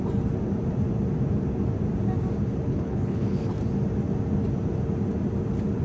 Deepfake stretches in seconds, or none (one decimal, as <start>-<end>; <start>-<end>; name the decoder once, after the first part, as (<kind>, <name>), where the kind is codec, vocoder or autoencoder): 2.7-3.5 (codec, HILCodec)